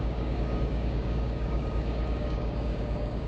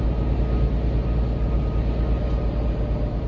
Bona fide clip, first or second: second